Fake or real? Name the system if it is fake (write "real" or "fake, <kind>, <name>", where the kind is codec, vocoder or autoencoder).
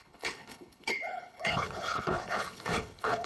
fake, codec, HILCodec